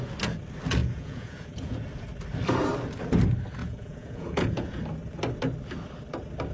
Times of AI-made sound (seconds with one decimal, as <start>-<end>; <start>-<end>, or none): 0.8-1.8; 3.6-4.8